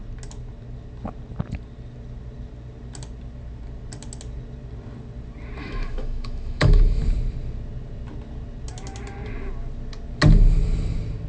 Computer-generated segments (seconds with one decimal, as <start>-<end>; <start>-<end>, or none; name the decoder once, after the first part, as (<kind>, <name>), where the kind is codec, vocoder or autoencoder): 5.6-7.0 (autoencoder, DAC-VAE)